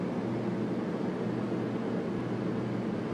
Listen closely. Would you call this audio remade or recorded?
recorded